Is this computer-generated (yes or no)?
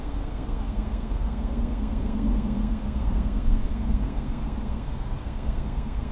yes